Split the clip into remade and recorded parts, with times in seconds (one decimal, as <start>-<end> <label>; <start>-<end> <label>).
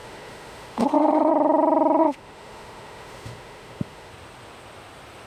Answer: 0.0-1.3 remade; 1.3-2.0 recorded; 2.0-4.1 remade; 4.1-5.3 recorded